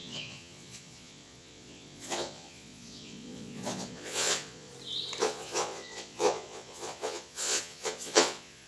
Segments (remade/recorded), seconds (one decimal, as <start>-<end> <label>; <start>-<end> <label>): 0.0-4.7 remade; 4.7-5.2 recorded; 5.2-8.7 remade